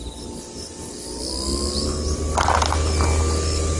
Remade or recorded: recorded